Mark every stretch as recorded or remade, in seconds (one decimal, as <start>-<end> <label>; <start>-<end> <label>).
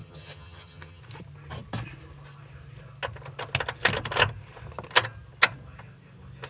0.0-1.0 remade; 1.0-6.5 recorded